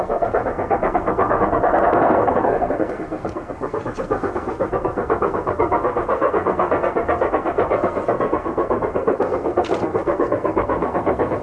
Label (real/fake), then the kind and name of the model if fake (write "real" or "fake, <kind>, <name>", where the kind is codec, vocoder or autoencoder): fake, codec, SNAC